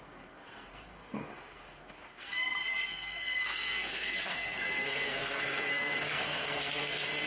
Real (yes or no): no